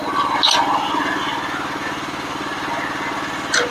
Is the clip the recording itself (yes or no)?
yes